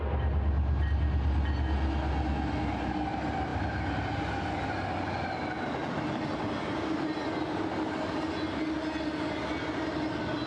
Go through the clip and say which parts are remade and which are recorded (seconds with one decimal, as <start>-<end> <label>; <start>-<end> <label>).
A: 0.0-10.5 recorded